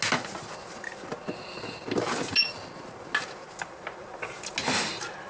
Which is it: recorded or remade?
recorded